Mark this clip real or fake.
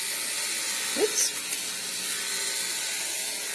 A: real